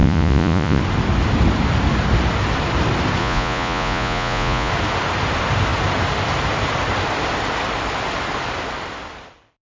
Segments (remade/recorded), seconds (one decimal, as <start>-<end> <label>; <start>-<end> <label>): 0.0-0.8 remade; 0.8-3.2 recorded; 3.2-4.7 remade; 4.7-9.6 recorded